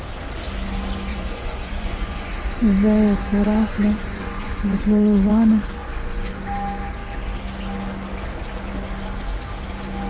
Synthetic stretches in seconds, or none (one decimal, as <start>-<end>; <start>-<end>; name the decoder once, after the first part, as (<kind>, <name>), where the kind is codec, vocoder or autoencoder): 1.1-2.3 (vocoder, Vocos); 3.3-5.3; 5.8-6.3